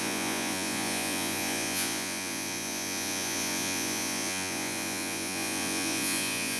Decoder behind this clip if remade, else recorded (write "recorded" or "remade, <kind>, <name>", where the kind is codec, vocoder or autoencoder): remade, vocoder, Vocos